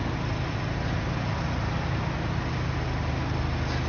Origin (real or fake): real